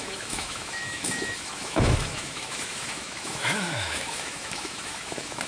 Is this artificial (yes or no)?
yes